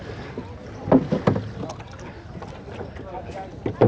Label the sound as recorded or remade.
recorded